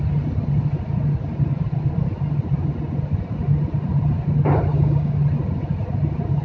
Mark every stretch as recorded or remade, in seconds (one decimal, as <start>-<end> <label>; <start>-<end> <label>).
0.0-4.7 recorded; 4.7-5.2 remade; 5.2-6.4 recorded